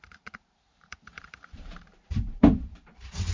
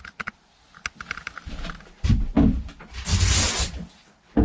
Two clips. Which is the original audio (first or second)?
second